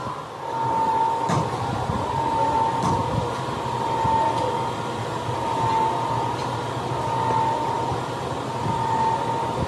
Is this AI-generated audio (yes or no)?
no